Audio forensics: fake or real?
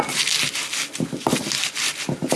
real